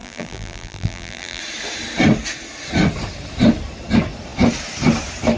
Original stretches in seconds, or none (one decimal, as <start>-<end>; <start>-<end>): 1.4-5.4